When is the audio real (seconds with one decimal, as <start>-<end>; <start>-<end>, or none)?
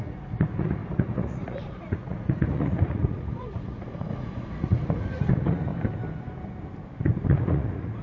5.7-7.0